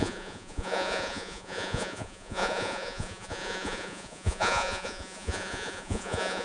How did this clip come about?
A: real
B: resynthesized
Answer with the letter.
B